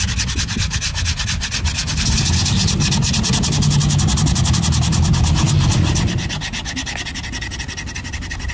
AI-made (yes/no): no